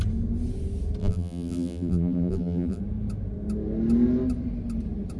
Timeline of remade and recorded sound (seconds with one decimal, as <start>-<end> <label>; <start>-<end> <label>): 0.0-1.0 recorded; 1.0-2.8 remade; 2.8-5.2 recorded